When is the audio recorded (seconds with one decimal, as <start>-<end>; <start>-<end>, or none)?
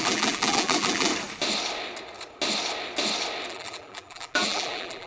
1.1-3.5